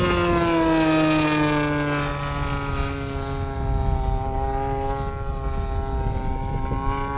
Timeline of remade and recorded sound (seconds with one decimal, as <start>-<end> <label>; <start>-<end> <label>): 0.0-7.2 recorded